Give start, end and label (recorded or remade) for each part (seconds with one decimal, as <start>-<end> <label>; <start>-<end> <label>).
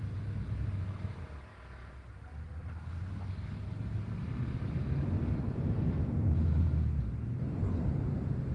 0.0-8.5 recorded